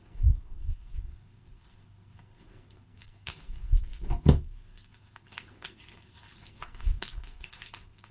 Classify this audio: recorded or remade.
remade